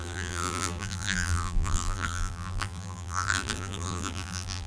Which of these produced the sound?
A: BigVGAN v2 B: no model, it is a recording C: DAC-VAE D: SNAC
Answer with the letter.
A